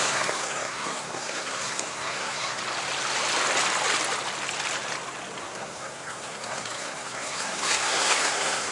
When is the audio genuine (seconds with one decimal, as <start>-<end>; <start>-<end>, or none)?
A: 2.6-5.4